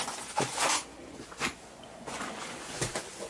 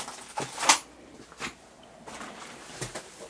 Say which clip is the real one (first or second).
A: second